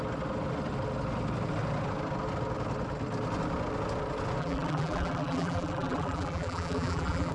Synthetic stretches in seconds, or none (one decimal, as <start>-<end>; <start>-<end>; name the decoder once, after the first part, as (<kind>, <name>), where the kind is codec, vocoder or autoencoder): 4.4-7.3 (vocoder, BigVGAN v2)